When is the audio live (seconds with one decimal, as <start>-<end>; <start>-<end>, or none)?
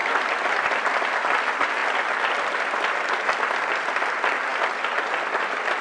0.0-5.8